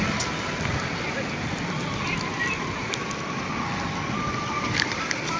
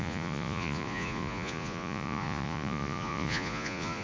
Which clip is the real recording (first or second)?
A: first